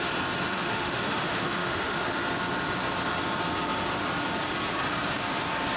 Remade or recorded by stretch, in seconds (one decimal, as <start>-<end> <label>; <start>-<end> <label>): 0.0-0.5 recorded; 0.5-2.2 remade; 2.2-5.8 recorded